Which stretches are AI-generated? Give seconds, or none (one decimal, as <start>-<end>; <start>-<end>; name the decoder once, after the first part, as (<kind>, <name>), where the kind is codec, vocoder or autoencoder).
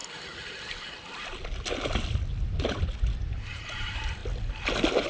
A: 3.1-4.2 (vocoder, BigVGAN v2)